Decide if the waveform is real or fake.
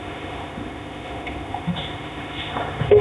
fake